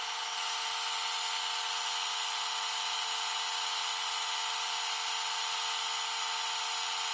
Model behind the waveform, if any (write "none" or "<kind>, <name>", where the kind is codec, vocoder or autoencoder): none